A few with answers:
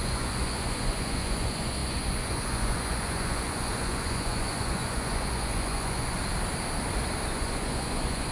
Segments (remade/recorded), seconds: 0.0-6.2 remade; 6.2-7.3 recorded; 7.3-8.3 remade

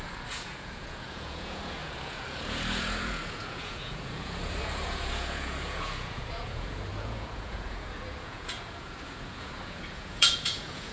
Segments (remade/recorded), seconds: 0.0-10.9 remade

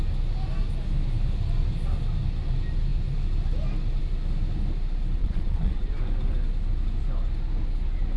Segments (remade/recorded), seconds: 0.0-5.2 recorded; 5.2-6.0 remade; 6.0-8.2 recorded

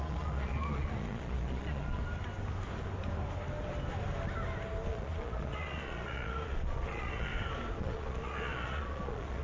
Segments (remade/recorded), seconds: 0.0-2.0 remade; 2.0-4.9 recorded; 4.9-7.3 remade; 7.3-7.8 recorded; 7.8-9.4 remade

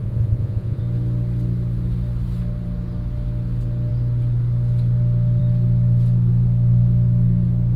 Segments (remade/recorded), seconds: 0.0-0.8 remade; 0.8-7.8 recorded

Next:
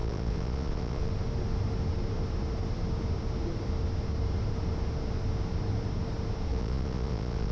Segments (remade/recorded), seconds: 0.0-1.1 remade; 1.1-6.5 recorded; 6.5-7.5 remade